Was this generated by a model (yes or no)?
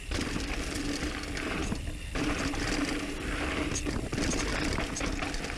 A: no